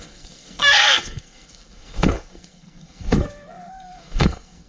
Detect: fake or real fake